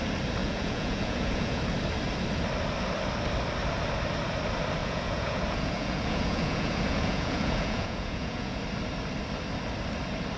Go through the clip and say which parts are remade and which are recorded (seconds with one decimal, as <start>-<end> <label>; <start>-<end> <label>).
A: 0.0-0.4 recorded; 0.4-1.6 remade; 1.6-4.8 recorded; 4.8-8.6 remade; 8.6-10.4 recorded